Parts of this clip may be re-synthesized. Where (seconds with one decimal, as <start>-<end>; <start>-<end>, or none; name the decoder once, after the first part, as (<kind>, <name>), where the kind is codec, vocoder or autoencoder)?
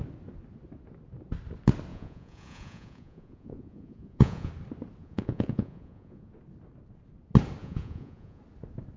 1.9-4.5 (vocoder, Vocos); 5.0-6.3; 7.6-8.4